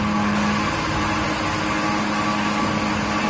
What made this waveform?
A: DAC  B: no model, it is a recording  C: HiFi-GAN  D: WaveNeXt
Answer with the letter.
B